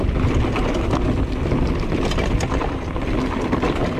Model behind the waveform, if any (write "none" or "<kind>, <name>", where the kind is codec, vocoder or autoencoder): none